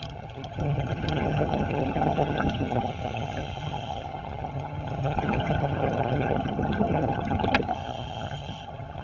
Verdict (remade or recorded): remade